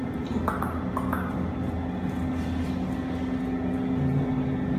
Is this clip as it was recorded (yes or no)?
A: yes